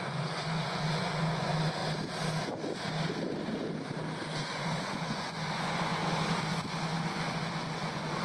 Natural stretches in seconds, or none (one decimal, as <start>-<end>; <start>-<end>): 1.8-4.4; 6.0-6.5